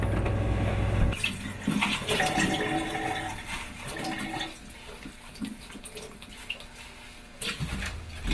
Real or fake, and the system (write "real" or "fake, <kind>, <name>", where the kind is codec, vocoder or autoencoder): real